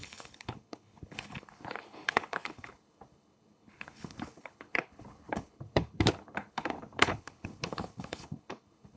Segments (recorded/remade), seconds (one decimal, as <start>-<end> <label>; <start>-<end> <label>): 0.0-9.0 remade